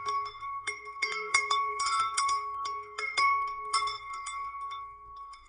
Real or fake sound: fake